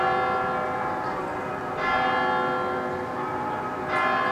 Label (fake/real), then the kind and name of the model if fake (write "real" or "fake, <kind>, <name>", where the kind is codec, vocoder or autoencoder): real